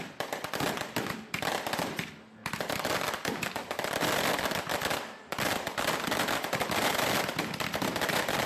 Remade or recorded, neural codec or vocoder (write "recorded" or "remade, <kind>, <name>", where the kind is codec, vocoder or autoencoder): remade, vocoder, BigVGAN v2